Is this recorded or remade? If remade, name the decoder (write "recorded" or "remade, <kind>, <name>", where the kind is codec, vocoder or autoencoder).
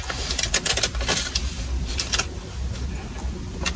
recorded